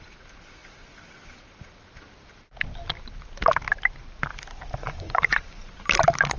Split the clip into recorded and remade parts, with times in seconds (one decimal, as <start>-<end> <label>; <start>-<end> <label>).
0.0-4.8 recorded; 4.8-5.7 remade; 5.7-6.4 recorded